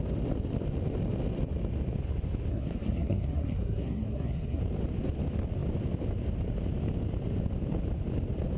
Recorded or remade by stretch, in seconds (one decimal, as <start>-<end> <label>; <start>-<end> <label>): 0.0-2.5 recorded; 2.5-4.6 remade; 4.6-8.6 recorded

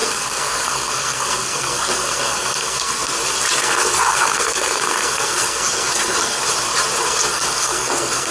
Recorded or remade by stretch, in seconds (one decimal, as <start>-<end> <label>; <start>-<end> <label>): 0.0-3.1 remade; 3.1-3.6 recorded; 3.6-6.4 remade; 6.4-7.0 recorded; 7.0-8.3 remade